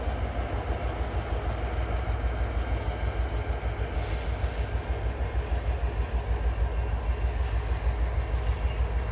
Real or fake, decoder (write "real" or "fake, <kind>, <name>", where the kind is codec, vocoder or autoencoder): real